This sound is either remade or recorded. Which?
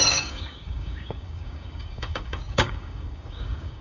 remade